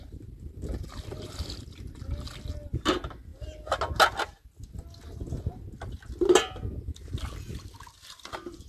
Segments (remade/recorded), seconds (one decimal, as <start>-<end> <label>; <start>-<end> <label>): 0.0-8.7 recorded